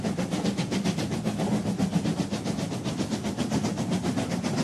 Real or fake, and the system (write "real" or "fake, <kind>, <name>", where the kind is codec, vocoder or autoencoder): real